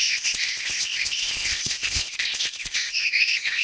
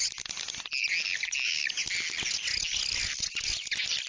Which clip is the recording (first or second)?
second